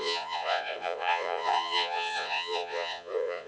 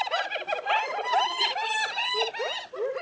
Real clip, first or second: second